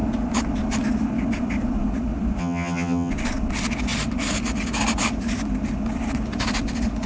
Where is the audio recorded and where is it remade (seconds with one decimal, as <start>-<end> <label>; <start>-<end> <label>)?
0.0-2.4 recorded; 2.4-3.1 remade; 3.1-7.1 recorded